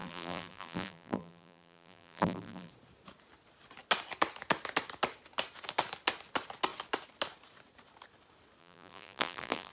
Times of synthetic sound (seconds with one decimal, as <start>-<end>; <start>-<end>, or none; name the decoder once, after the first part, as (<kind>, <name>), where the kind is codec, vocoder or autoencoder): 0.0-2.7 (vocoder, BigVGAN v2); 8.6-9.7